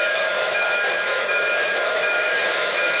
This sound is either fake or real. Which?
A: fake